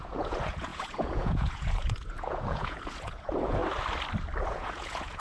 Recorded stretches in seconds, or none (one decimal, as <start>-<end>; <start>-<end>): 3.6-4.4